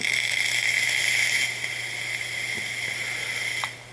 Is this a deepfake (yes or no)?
no